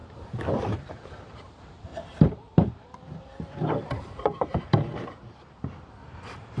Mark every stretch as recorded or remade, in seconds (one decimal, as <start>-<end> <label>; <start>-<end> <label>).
0.0-6.6 remade